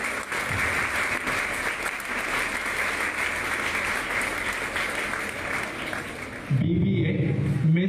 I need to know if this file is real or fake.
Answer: real